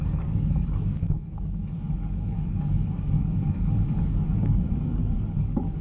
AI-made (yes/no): yes